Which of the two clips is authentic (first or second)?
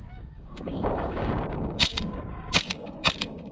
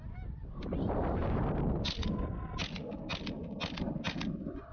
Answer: second